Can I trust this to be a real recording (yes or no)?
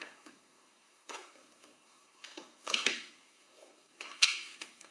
no